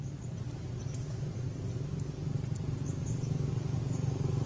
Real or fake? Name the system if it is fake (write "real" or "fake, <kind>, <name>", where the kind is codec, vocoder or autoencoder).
real